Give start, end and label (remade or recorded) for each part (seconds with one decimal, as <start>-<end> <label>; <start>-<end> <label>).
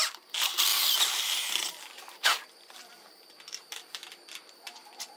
0.0-0.7 remade; 0.7-2.9 recorded; 2.9-4.0 remade; 4.0-5.2 recorded